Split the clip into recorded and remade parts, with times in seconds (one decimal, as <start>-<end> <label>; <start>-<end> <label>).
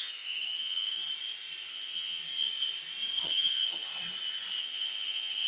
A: 0.0-1.0 remade; 1.0-1.7 recorded; 1.7-2.2 remade; 2.2-3.2 recorded; 3.2-3.9 remade; 3.9-4.6 recorded; 4.6-5.5 remade